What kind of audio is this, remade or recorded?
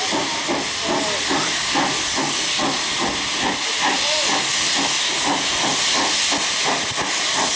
recorded